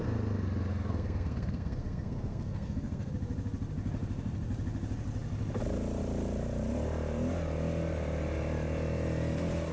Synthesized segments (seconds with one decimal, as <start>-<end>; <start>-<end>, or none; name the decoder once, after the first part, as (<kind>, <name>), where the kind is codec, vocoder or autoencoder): 0.7-3.1 (codec, SNAC)